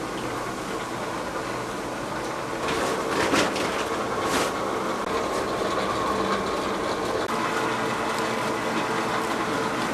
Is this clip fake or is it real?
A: real